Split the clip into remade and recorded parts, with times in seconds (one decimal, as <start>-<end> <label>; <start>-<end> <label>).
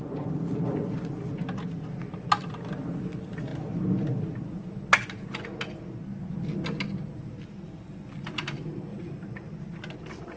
0.0-8.9 recorded; 8.9-9.5 remade; 9.5-10.4 recorded